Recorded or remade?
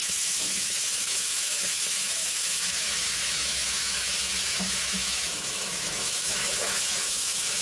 remade